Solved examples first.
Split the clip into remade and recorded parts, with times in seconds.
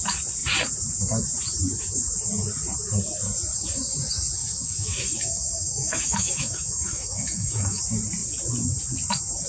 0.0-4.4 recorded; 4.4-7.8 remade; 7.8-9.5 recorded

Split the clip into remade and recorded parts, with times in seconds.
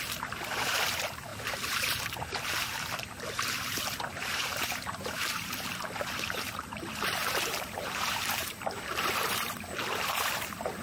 0.0-10.8 remade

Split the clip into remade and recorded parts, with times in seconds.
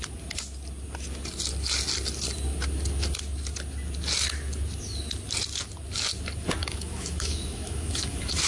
0.0-6.6 recorded; 6.6-8.5 remade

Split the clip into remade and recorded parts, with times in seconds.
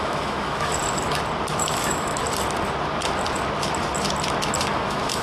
0.0-0.7 remade; 0.7-1.6 recorded; 1.6-2.2 remade; 2.2-4.7 recorded; 4.7-5.2 remade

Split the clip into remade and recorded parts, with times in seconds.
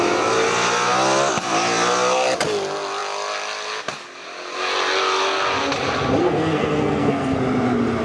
0.0-6.2 recorded; 6.2-7.4 remade; 7.4-8.0 recorded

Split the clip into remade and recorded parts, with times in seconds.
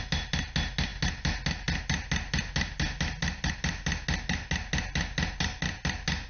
0.0-6.3 recorded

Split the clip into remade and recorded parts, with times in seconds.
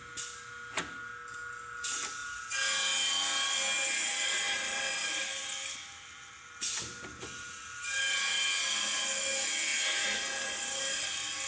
0.0-11.5 recorded